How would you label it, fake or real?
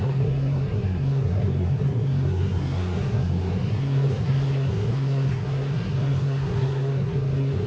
fake